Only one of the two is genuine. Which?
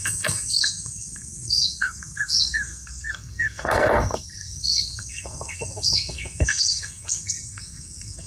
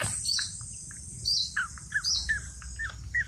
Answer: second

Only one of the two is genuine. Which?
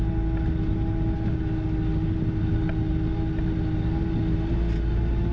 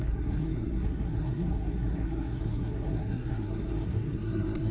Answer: first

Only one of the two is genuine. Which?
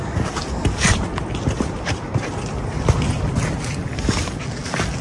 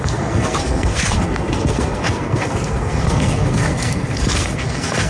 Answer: first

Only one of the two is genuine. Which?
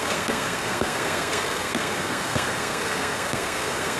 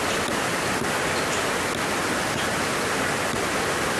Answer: second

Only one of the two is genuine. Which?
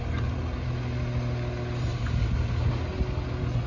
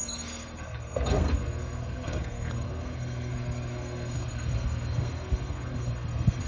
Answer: first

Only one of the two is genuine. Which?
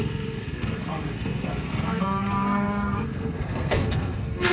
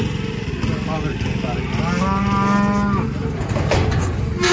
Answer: second